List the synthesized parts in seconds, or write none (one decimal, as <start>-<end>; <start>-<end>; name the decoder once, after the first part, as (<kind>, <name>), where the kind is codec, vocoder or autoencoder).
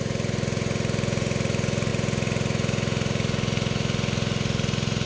none